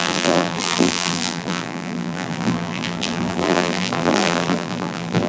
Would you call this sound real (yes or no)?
no